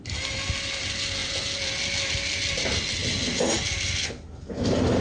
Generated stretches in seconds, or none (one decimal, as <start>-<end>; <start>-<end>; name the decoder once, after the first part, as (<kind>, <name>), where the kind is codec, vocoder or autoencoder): none